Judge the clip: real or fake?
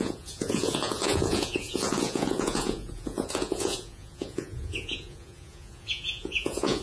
fake